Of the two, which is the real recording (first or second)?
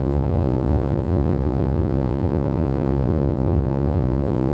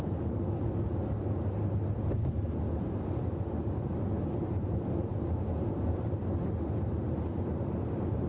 second